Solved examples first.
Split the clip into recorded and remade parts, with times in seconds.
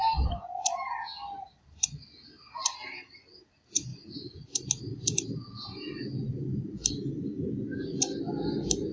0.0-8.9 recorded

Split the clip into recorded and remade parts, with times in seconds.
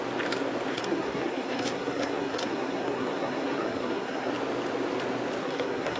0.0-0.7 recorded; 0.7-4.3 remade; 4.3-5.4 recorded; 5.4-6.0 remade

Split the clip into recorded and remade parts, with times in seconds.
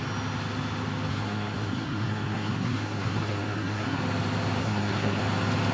0.0-1.1 recorded; 1.1-4.0 remade; 4.0-4.6 recorded; 4.6-5.2 remade; 5.2-5.7 recorded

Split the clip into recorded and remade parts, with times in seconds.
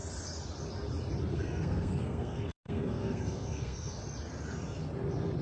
0.0-1.3 recorded; 1.3-4.0 remade; 4.0-5.4 recorded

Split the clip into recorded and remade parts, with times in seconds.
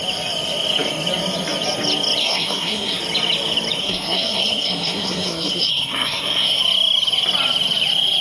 0.0-2.2 recorded; 2.2-3.0 remade; 3.0-3.8 recorded; 3.8-6.6 remade; 6.6-8.2 recorded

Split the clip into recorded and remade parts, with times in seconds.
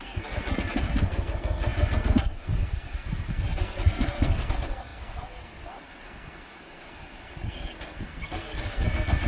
0.0-9.3 remade